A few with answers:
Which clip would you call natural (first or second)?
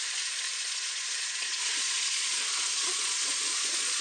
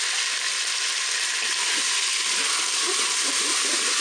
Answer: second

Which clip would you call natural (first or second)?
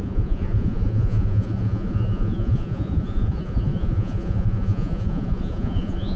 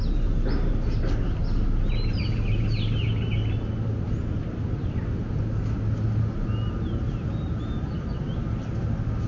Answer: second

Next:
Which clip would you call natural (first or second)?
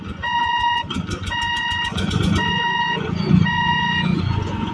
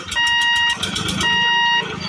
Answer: second